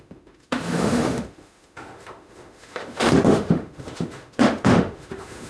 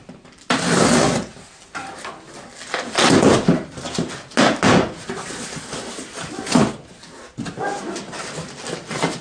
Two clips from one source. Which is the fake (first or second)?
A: first